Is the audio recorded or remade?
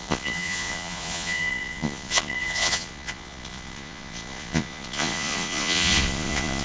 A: remade